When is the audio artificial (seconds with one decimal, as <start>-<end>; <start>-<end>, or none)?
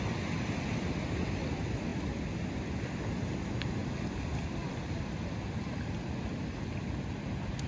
none